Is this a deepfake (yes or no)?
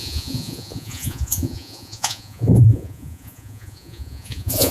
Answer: yes